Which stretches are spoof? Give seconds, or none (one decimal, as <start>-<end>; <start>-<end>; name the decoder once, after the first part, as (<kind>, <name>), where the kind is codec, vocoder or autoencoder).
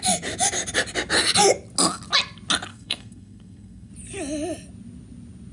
2.7-3.9 (codec, SNAC)